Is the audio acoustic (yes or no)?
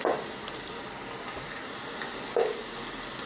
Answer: yes